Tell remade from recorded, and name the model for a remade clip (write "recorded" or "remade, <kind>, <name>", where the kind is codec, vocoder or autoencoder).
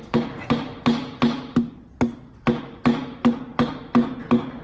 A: recorded